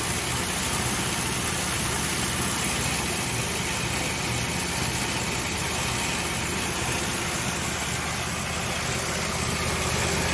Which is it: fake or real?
real